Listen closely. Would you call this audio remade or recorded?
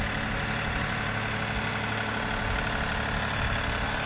recorded